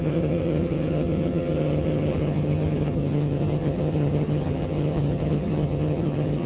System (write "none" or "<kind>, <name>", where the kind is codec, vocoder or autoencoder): vocoder, HiFi-GAN